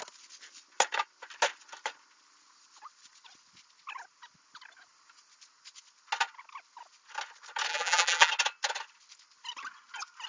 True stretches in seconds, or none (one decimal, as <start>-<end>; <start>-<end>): 0.0-7.7; 8.3-10.3